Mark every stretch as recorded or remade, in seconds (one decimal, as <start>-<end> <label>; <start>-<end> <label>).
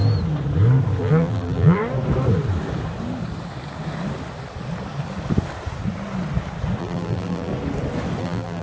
0.0-1.0 recorded; 1.0-1.8 remade; 1.8-6.8 recorded; 6.8-7.5 remade; 7.5-8.2 recorded; 8.2-8.6 remade